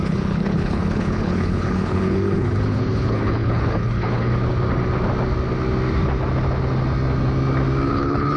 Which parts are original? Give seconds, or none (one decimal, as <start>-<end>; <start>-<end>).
4.3-7.9